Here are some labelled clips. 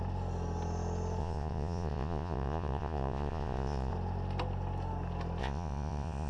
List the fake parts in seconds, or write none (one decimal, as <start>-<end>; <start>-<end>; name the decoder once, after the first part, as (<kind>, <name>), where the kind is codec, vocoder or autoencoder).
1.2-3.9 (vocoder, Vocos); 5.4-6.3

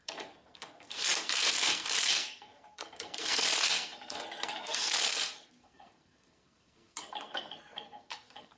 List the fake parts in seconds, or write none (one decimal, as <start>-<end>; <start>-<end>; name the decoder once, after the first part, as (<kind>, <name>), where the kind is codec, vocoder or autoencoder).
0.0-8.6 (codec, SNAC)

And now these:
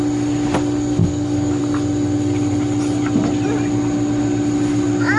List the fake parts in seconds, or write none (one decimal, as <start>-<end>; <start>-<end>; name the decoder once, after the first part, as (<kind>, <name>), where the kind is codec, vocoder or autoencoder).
1.0-1.6 (codec, DAC)